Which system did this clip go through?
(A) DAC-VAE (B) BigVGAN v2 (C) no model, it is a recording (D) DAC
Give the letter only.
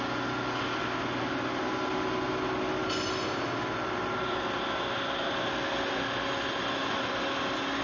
C